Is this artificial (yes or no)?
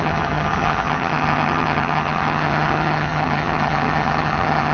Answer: yes